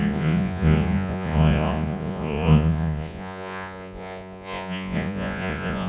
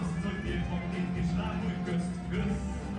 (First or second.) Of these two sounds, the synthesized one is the first